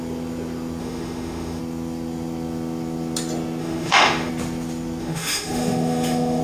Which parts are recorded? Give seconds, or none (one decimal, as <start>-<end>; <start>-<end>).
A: 0.0-0.8; 1.6-3.6; 4.3-5.0